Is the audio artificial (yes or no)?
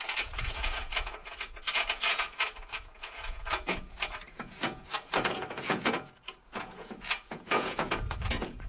yes